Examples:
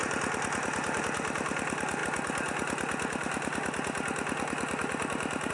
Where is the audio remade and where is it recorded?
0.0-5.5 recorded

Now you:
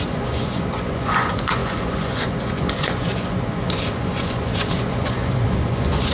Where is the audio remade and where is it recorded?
0.0-6.1 remade

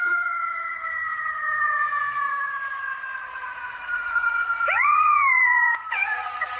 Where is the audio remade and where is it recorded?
0.0-6.6 remade